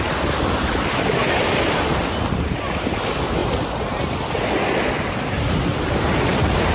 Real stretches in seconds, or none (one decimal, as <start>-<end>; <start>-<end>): 0.0-6.7

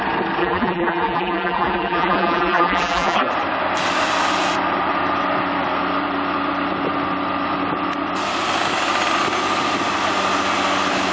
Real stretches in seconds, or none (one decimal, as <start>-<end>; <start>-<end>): 0.0-0.4; 3.3-11.1

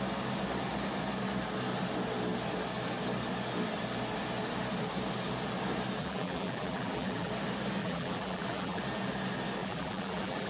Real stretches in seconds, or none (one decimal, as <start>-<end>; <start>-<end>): 0.0-6.0; 7.3-7.8; 8.8-9.6

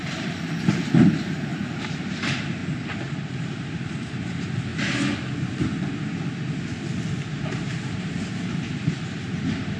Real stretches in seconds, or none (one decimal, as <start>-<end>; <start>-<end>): 2.6-3.3; 4.7-7.5